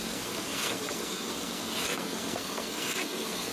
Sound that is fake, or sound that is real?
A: fake